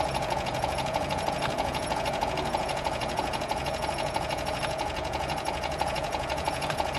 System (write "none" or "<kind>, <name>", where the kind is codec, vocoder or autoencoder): vocoder, Vocos